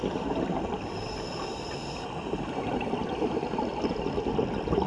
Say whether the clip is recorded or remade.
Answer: recorded